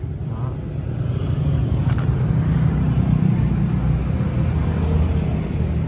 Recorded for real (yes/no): yes